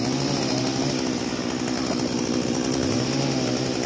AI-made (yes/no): no